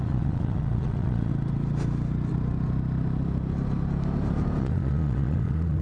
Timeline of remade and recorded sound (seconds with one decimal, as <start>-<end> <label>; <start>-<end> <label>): 0.0-1.3 remade; 1.3-4.6 recorded; 4.6-5.8 remade